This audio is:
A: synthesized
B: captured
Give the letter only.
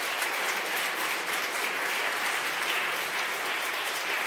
B